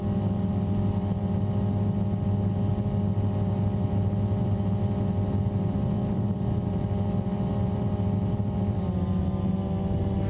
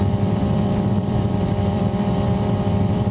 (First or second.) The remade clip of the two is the second